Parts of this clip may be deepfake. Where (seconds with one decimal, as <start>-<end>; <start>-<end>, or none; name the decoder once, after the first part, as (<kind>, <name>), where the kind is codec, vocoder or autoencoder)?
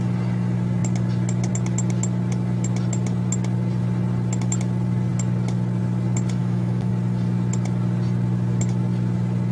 6.4-6.9 (autoencoder, DAC-VAE)